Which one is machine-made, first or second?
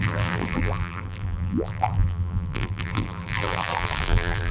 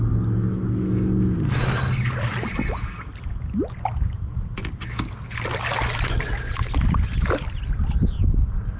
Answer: first